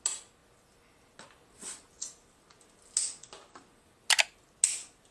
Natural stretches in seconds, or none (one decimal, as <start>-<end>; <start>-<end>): 0.0-5.1